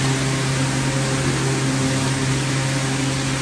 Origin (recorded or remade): recorded